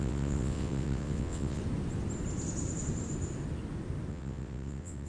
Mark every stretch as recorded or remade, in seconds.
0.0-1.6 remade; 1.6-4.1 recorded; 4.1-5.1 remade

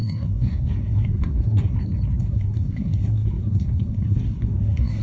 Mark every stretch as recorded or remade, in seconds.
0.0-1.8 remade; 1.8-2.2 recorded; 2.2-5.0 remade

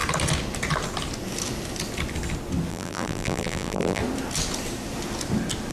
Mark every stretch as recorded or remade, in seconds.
0.0-2.7 recorded; 2.7-4.0 remade; 4.0-5.7 recorded